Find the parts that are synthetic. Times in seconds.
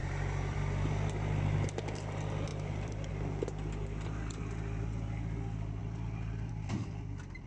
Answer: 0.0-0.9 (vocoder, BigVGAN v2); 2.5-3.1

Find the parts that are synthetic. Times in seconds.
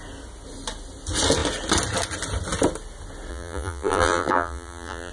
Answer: 3.3-5.1 (vocoder, BigVGAN v2)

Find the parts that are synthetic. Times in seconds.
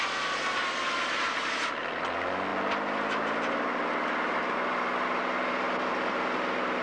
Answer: none